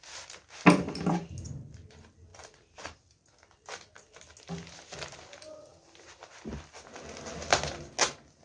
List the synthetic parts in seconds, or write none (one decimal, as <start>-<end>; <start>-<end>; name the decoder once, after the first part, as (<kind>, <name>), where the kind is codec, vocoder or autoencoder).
none